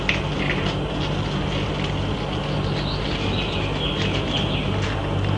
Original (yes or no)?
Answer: yes